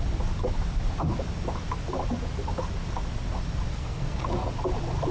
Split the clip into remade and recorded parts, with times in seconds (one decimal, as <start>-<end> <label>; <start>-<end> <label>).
0.0-3.7 recorded; 3.7-4.5 remade; 4.5-5.1 recorded